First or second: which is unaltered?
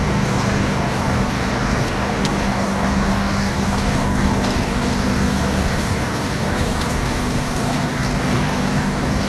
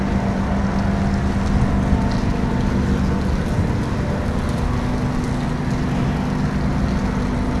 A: second